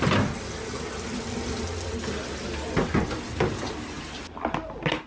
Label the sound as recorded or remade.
recorded